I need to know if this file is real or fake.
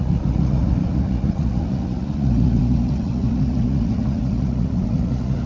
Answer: fake